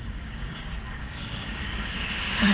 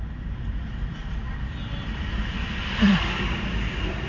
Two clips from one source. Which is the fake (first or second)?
first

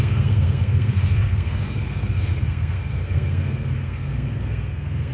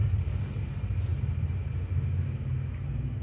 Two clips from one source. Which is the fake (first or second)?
first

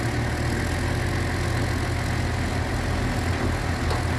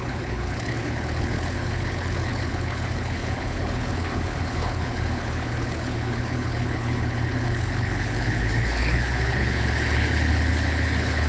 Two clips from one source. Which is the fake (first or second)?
second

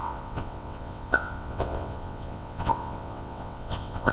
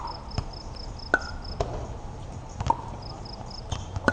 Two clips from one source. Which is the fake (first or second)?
first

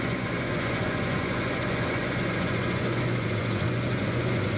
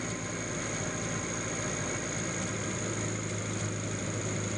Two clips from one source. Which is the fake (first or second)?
first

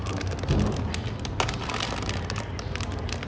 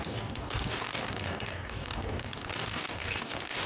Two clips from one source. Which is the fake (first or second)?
second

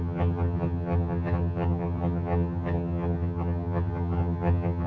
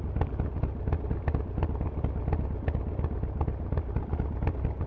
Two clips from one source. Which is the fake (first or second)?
first